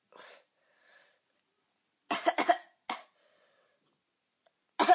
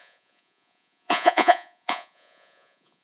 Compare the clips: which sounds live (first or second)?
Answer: first